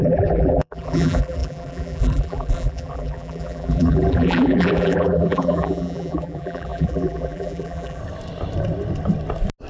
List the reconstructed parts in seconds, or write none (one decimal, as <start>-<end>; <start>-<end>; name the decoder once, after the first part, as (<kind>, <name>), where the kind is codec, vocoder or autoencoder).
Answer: 0.0-8.0 (vocoder, BigVGAN v2)